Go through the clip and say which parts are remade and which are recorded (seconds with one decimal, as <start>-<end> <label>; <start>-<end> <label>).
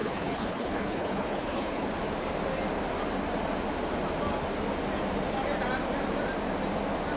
0.0-1.9 remade; 1.9-7.2 recorded